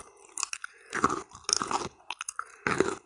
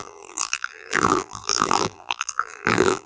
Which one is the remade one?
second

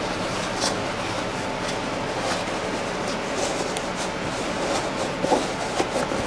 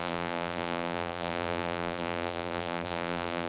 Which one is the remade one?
second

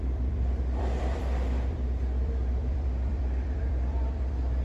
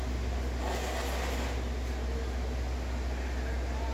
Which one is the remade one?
first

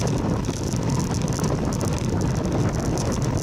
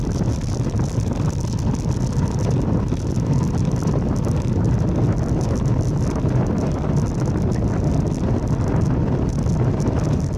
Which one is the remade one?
first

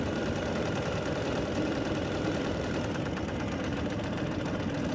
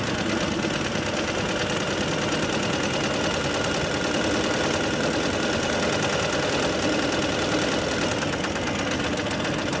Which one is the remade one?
first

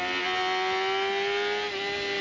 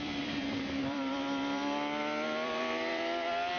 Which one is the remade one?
second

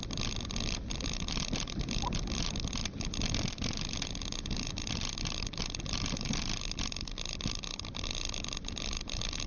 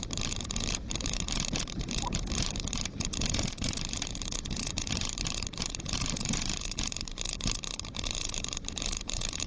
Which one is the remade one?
second